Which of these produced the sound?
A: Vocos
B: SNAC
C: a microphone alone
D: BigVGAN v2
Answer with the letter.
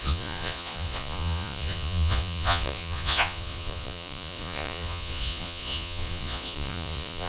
A